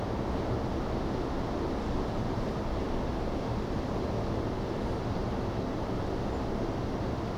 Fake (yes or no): no